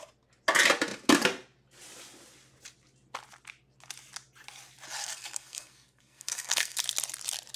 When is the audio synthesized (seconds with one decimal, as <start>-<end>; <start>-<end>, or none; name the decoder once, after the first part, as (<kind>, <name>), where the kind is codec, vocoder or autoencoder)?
5.0-6.8 (codec, SNAC)